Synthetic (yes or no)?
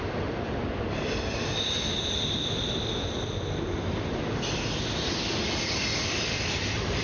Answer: no